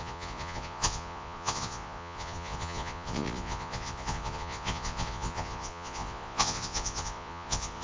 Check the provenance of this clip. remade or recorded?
remade